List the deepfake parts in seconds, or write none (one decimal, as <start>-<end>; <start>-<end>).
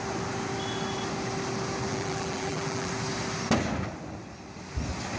1.9-2.9